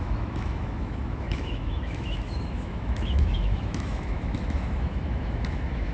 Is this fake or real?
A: fake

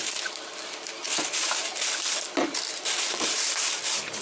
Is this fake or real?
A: real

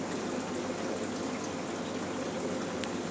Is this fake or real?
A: real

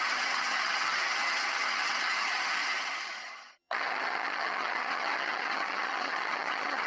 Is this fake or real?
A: fake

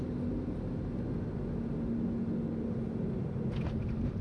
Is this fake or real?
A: real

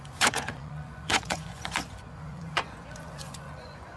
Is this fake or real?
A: fake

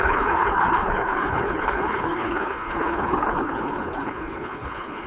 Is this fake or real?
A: fake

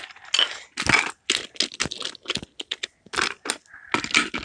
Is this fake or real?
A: real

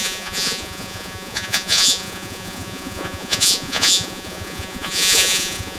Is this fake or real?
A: fake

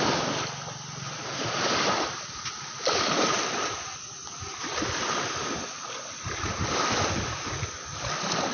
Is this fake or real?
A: real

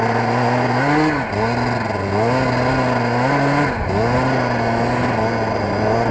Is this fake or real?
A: real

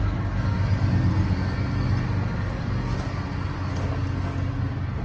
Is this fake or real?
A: real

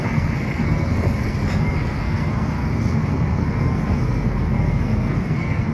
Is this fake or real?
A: fake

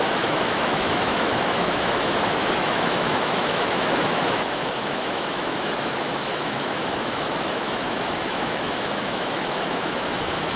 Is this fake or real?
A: fake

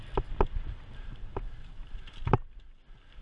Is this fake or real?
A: real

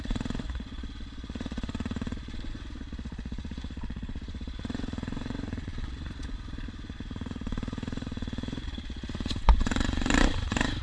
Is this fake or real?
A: fake